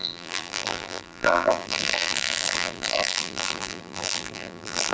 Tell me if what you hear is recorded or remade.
remade